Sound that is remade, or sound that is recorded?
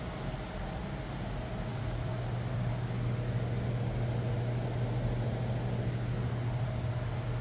recorded